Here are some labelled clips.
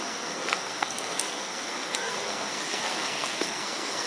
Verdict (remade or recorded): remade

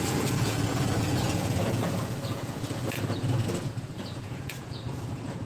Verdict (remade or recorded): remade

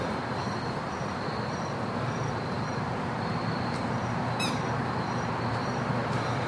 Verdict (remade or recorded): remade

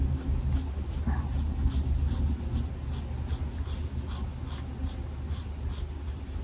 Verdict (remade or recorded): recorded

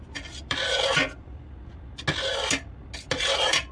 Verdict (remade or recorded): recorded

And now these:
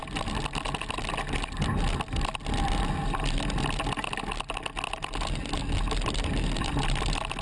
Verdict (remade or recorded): recorded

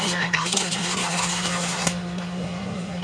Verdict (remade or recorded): remade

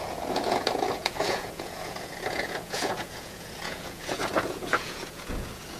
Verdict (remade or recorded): remade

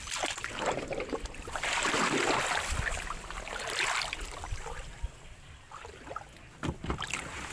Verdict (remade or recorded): recorded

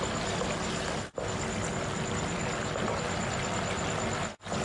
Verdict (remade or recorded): recorded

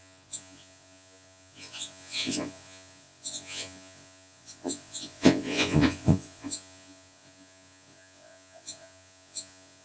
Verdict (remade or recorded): remade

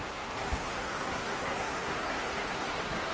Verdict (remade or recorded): remade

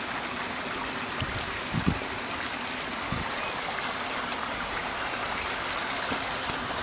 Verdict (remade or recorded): recorded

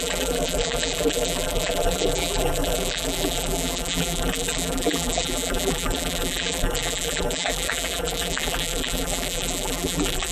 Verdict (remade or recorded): remade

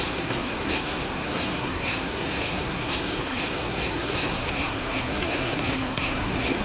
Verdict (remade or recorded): remade